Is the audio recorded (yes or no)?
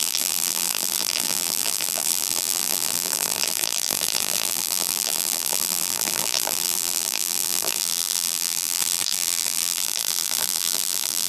no